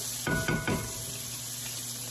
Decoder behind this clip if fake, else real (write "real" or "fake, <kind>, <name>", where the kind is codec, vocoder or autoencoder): real